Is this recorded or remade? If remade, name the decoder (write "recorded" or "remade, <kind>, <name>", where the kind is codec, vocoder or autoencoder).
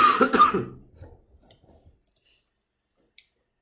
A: recorded